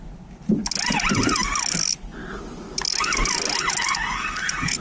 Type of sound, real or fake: real